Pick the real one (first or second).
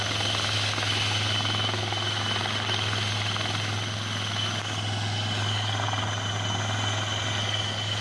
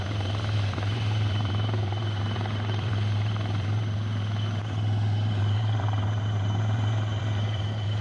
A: first